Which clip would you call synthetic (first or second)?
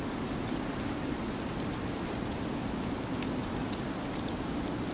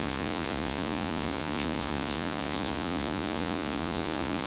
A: second